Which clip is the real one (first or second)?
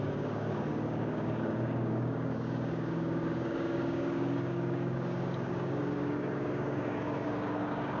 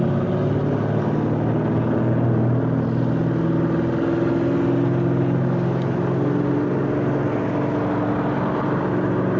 second